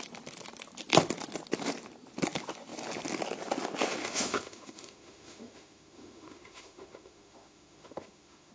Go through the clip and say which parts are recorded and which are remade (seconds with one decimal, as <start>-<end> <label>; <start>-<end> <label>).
0.0-4.0 recorded; 4.0-8.5 remade